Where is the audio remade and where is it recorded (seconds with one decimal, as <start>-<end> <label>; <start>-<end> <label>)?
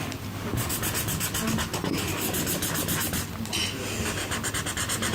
0.0-5.1 recorded